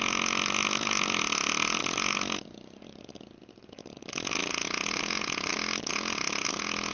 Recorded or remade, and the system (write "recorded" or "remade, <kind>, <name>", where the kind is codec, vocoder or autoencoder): recorded